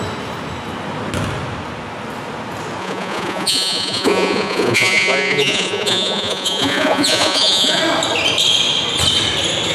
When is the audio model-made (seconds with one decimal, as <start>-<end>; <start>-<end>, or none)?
2.8-7.8

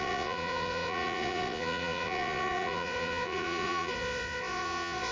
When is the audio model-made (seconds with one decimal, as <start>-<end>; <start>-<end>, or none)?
0.0-5.1